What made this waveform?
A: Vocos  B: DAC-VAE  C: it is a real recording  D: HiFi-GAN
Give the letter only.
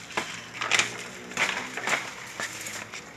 C